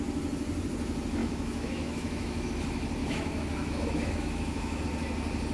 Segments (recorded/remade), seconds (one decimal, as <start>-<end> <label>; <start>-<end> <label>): 0.0-1.2 recorded; 1.2-2.5 remade; 2.5-3.0 recorded; 3.0-4.8 remade; 4.8-5.5 recorded

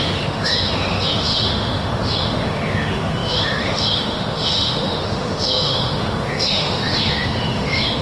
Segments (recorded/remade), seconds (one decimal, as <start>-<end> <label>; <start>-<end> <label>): 0.0-8.0 remade

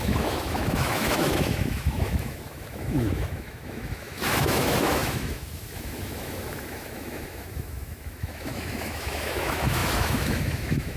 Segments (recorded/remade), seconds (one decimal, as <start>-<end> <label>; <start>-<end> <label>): 0.0-11.0 remade

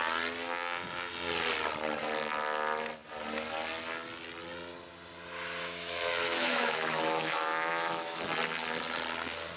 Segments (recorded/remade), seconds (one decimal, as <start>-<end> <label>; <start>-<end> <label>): 0.0-5.6 recorded; 5.6-8.2 remade; 8.2-9.6 recorded